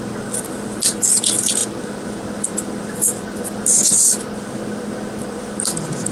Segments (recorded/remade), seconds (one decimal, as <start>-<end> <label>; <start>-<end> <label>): 0.0-6.1 recorded